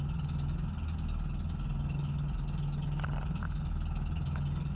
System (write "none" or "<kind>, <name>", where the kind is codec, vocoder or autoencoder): none